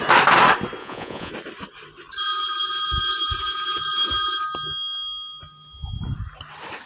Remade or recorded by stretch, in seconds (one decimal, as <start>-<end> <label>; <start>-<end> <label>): 0.0-0.8 recorded; 0.8-1.3 remade; 1.3-6.9 recorded